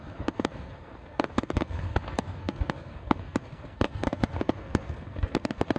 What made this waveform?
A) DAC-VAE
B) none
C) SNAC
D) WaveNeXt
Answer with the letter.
C